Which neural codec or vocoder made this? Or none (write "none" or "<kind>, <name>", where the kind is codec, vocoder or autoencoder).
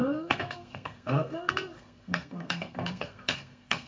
codec, SNAC